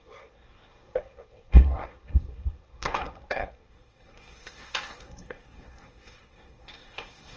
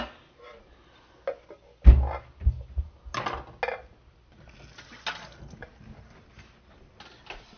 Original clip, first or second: second